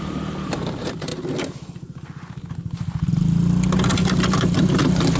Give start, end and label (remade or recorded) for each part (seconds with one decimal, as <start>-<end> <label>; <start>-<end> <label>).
0.0-1.1 remade; 1.1-4.2 recorded; 4.2-5.2 remade